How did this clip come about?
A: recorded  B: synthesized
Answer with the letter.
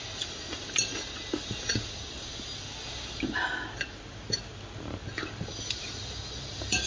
A